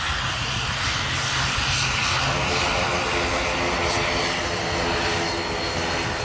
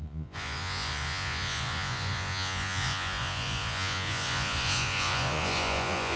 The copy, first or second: second